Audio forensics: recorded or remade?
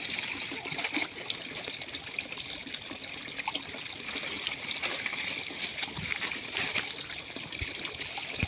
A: recorded